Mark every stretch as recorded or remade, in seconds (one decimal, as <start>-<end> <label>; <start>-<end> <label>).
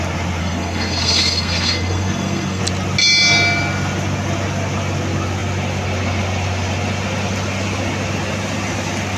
0.0-0.4 recorded; 0.4-2.6 remade; 2.6-9.2 recorded